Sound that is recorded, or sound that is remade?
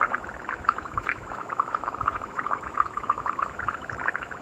remade